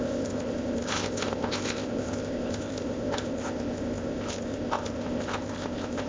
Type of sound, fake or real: fake